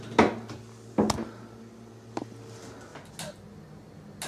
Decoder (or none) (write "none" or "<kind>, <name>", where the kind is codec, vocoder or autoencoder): none